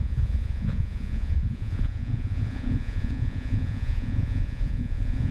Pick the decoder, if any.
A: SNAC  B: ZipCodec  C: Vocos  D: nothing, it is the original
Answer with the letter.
C